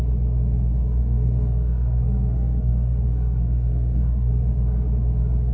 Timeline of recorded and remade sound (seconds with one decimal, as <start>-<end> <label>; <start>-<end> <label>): 0.0-1.0 recorded; 1.0-4.3 remade; 4.3-5.5 recorded